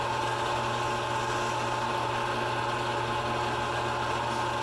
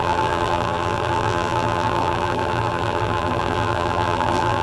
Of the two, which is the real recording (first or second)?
first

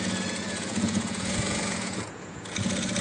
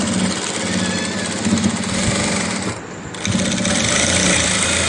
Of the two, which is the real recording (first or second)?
second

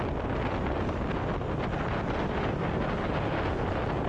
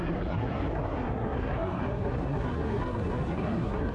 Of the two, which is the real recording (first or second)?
first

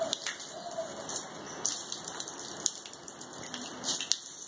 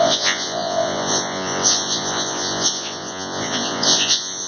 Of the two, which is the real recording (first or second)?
first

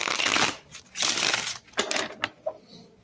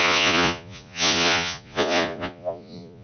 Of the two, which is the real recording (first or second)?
first